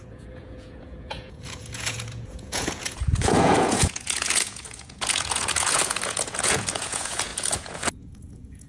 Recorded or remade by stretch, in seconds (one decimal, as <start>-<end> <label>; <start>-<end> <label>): 0.0-8.7 remade